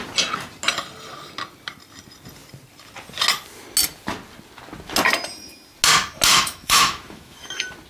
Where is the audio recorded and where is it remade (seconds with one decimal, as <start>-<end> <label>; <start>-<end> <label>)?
0.0-6.3 recorded; 6.3-7.5 remade; 7.5-7.9 recorded